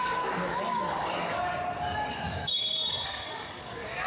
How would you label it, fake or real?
fake